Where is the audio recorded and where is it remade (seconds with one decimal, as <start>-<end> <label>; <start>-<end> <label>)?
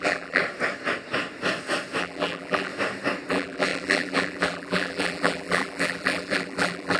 0.0-0.4 remade; 0.4-2.0 recorded; 2.0-2.7 remade; 2.7-3.3 recorded; 3.3-7.0 remade